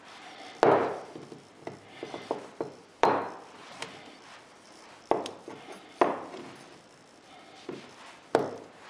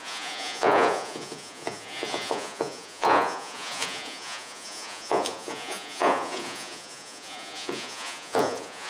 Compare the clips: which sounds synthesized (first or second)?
second